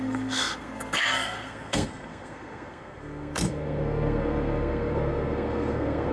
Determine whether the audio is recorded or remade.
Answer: remade